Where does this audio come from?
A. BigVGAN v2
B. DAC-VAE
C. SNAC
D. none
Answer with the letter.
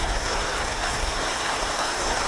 C